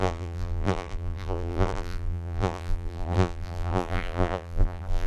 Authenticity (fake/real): fake